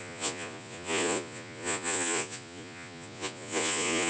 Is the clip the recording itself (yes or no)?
no